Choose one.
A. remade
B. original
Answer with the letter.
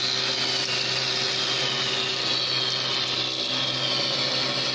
B